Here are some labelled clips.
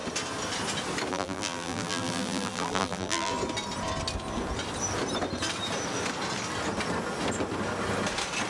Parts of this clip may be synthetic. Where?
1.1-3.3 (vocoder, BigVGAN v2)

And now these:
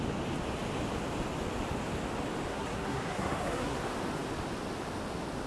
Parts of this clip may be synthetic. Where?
2.5-3.8 (codec, SNAC)

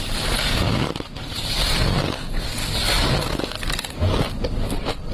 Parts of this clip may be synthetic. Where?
2.6-3.1 (codec, DAC)

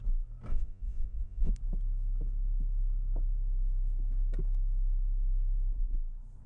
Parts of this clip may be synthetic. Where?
0.5-1.5 (vocoder, Vocos)

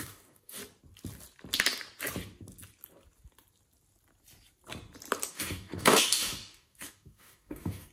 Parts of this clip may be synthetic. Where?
0.0-0.6 (codec, DAC); 5.3-7.9

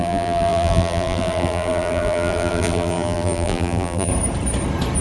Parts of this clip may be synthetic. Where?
0.0-4.1 (vocoder, BigVGAN v2)